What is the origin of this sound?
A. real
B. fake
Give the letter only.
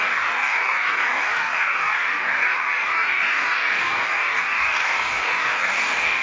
B